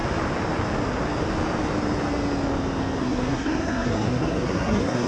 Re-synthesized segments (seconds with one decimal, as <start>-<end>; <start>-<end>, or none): 3.0-5.1